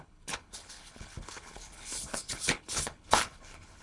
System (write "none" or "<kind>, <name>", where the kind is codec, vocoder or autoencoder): codec, HILCodec